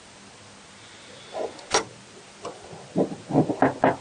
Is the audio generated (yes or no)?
no